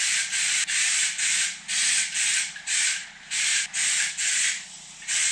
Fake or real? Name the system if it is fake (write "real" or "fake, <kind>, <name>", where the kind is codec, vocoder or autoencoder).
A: real